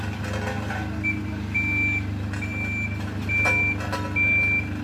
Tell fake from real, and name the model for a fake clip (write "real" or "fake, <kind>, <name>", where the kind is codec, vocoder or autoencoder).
real